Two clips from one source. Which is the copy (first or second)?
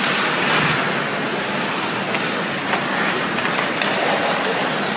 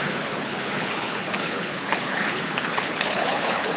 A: second